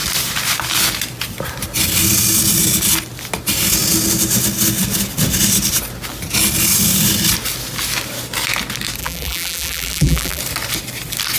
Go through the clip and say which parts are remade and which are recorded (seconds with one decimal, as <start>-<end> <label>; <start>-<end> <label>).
0.0-9.0 recorded; 9.0-10.4 remade; 10.4-11.4 recorded